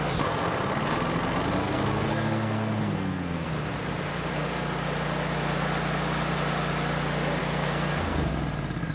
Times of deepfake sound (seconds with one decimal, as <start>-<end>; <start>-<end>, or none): 1.6-3.5; 7.4-8.3